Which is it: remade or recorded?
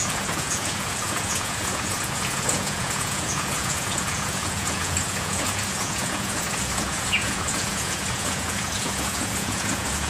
remade